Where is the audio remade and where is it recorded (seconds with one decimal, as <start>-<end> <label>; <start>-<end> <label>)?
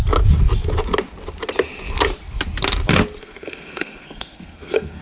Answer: 0.0-3.2 recorded; 3.2-5.0 remade